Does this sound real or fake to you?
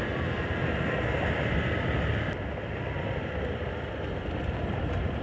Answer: real